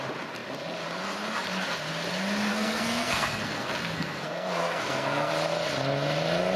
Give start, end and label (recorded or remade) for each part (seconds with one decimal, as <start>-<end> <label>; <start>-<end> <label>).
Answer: 0.0-2.5 recorded; 2.5-5.3 remade; 5.3-6.6 recorded